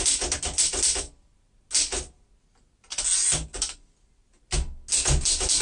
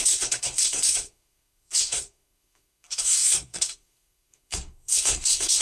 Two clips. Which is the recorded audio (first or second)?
first